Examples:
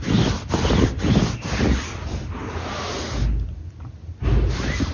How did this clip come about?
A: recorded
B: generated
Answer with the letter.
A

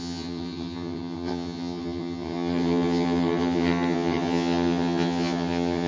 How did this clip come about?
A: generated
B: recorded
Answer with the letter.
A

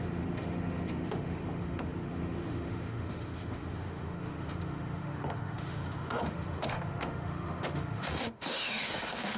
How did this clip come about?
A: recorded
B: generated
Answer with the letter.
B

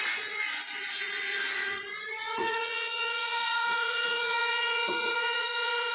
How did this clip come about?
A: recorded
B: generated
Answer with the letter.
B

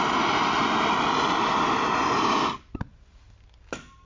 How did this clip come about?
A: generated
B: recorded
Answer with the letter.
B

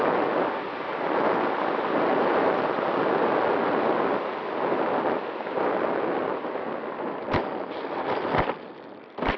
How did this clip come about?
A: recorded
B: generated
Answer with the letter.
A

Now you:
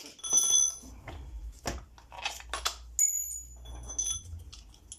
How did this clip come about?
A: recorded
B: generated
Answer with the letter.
A